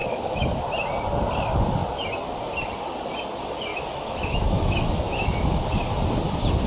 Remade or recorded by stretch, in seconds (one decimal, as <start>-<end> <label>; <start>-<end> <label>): 0.0-0.6 remade; 0.6-3.7 recorded; 3.7-5.7 remade; 5.7-6.7 recorded